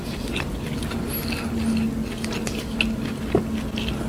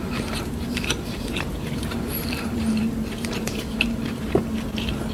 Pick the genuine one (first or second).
first